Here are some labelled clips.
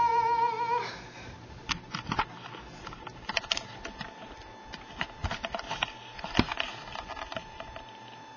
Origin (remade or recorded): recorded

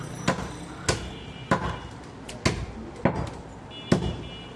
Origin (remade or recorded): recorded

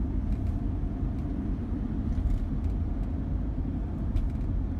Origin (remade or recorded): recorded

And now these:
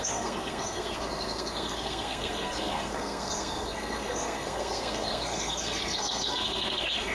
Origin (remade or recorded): remade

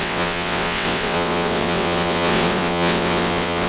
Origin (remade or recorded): remade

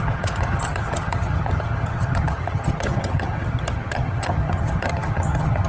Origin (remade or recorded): remade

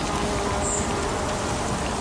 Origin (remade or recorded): recorded